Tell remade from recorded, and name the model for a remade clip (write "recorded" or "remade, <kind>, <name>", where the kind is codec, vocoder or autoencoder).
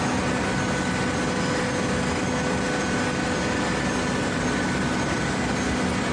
recorded